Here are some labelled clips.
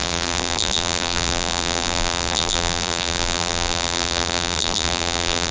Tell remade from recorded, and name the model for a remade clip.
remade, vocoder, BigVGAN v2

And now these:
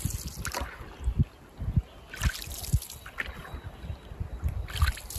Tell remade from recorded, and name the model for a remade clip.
recorded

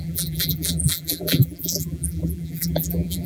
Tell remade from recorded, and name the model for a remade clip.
remade, vocoder, BigVGAN v2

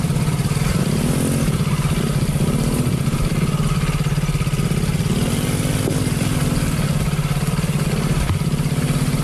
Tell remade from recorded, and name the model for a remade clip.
recorded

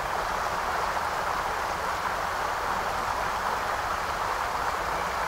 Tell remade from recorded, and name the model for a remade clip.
recorded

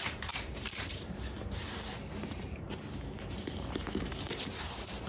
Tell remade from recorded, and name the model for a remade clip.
remade, vocoder, BigVGAN v2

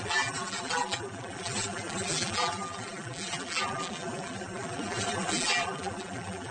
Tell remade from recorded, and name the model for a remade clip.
remade, vocoder, BigVGAN v2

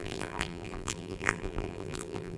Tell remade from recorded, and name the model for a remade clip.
remade, vocoder, BigVGAN v2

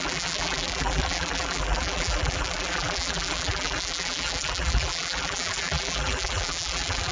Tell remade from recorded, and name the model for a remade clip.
remade, vocoder, BigVGAN v2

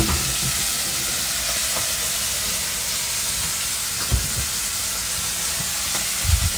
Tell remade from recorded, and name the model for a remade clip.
recorded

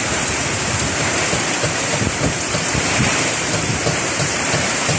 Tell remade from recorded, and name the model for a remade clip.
remade, vocoder, BigVGAN v2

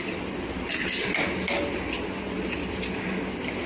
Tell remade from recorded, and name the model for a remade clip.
recorded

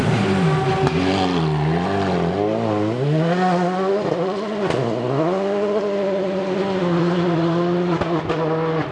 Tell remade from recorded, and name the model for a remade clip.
recorded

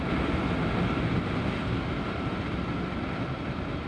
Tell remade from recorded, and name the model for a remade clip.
recorded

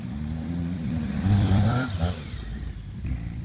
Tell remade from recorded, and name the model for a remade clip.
remade, vocoder, BigVGAN v2